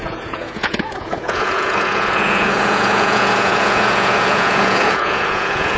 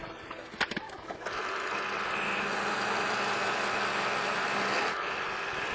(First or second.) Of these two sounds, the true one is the second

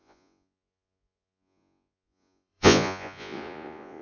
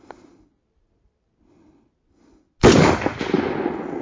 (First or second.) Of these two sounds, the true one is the second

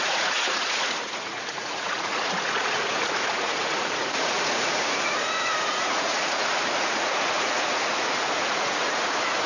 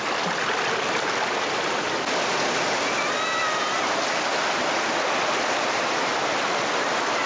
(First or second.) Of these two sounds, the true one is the second